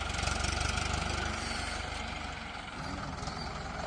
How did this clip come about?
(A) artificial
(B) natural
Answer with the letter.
A